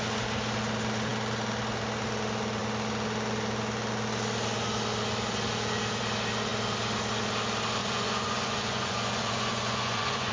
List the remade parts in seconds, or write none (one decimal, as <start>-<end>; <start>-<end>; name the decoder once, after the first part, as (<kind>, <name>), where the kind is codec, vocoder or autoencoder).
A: 7.8-10.3 (vocoder, Vocos)